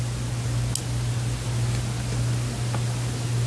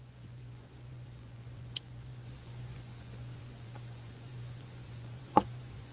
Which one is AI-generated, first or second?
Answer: second